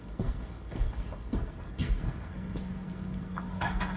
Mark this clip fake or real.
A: fake